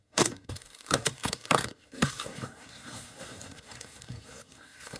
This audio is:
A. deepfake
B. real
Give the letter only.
A